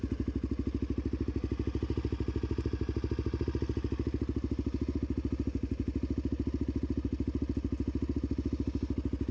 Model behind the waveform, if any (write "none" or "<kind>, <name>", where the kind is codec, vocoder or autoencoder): none